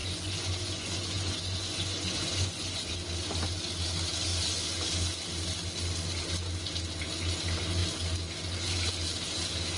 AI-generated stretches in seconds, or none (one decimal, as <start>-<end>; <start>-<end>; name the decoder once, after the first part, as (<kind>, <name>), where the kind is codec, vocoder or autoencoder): 0.0-2.9 (vocoder, Vocos)